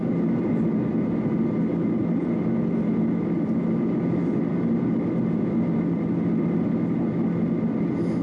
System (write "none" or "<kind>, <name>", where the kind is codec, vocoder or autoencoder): none